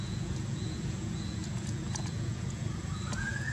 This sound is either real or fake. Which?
fake